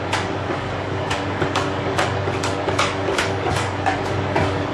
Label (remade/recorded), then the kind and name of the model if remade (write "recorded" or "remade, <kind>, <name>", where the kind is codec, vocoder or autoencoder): remade, codec, DAC